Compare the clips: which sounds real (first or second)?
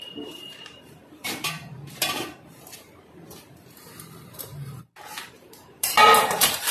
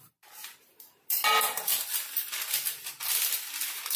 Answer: second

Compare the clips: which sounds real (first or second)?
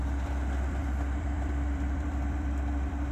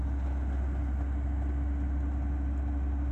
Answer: second